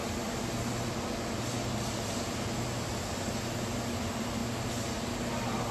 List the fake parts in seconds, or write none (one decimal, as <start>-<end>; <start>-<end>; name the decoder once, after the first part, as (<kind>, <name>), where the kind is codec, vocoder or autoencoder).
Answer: none